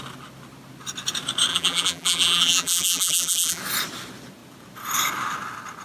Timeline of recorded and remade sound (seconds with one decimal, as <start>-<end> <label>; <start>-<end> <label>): 0.0-1.5 recorded; 1.5-3.6 remade; 3.6-5.8 recorded